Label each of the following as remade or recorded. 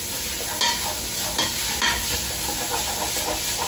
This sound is recorded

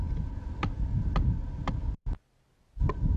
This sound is recorded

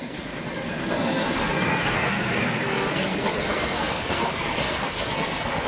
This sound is remade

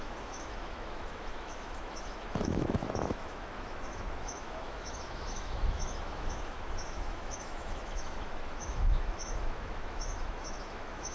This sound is remade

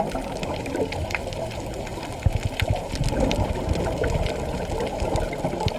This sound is recorded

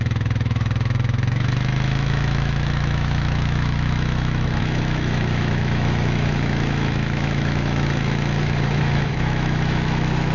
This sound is remade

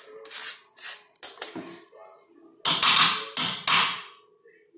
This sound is recorded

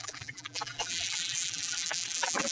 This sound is remade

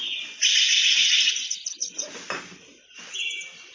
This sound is recorded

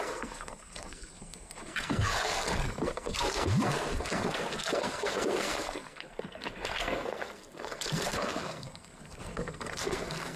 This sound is remade